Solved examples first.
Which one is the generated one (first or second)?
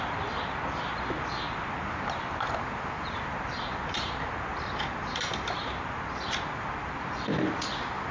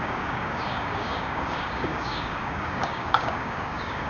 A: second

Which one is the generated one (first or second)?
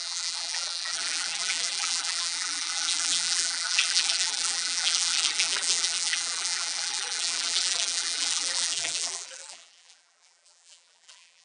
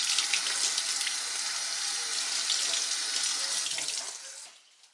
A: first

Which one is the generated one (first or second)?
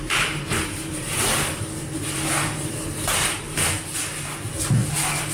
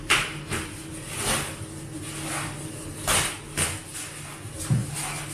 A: first